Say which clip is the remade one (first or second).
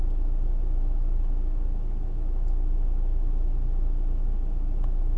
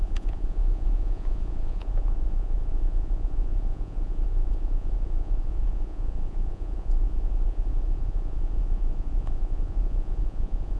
second